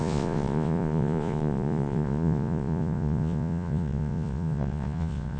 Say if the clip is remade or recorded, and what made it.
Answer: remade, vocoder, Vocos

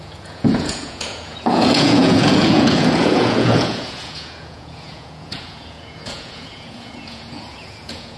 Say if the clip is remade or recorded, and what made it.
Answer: remade, vocoder, Vocos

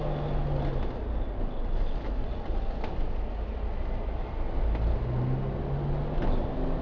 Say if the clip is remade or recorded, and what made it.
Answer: recorded